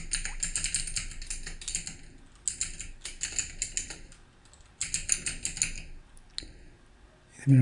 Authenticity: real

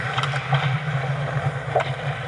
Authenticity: real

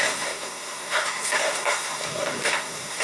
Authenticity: fake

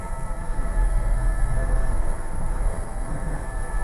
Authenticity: fake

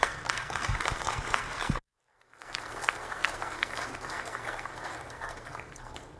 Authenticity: fake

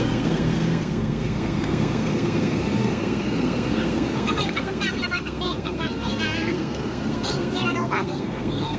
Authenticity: fake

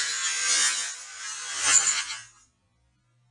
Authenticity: real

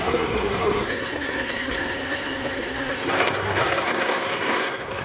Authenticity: fake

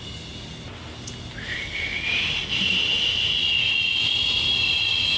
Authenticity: real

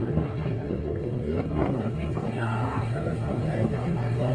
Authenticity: fake